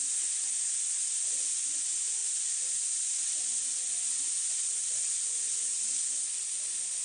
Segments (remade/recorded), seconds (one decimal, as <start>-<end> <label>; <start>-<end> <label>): 0.0-2.2 recorded; 2.2-5.2 remade; 5.2-7.0 recorded